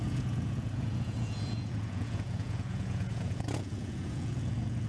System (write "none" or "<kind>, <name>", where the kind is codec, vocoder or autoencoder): vocoder, Vocos